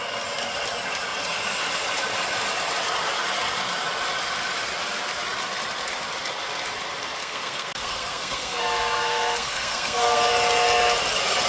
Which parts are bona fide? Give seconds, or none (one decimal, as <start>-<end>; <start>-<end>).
0.0-7.2; 10.3-11.5

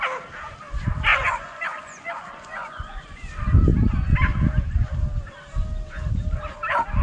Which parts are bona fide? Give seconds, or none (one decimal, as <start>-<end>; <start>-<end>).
0.0-1.1; 3.3-7.0

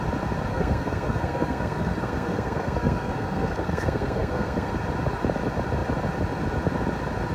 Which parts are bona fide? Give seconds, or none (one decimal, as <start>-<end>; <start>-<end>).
0.0-0.5; 4.7-7.3

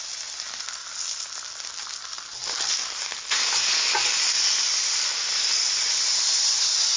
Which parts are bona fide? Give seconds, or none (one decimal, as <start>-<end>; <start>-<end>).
0.0-7.0

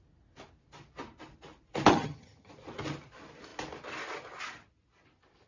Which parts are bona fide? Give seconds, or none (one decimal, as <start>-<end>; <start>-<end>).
0.0-1.9; 2.5-5.5

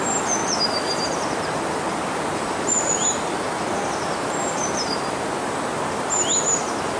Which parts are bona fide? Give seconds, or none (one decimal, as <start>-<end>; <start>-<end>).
0.0-7.0

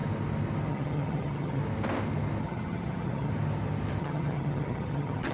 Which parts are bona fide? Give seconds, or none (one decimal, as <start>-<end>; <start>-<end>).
0.0-0.7; 1.6-2.4; 3.3-4.0

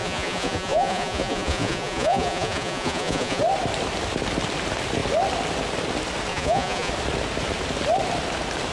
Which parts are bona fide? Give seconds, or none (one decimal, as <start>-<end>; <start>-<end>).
3.4-6.3; 6.9-8.7